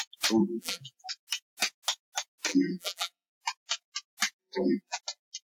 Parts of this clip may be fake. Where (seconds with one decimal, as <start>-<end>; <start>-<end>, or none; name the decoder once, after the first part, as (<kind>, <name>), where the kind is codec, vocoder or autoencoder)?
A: 0.4-1.1 (vocoder, BigVGAN v2); 2.5-3.3; 4.4-5.0

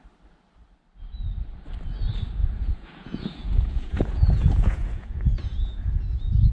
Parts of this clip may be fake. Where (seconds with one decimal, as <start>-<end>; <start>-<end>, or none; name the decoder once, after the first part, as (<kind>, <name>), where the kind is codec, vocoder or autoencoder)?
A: 2.4-6.5 (vocoder, Vocos)